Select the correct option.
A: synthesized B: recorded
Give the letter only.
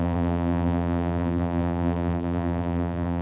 A